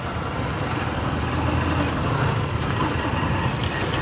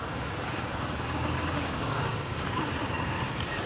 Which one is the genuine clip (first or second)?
first